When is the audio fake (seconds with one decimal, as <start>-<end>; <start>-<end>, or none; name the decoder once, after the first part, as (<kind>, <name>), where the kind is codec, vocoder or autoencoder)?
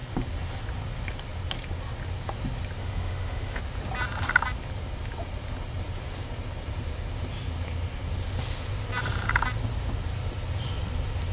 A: 2.8-3.6 (autoencoder, DAC-VAE)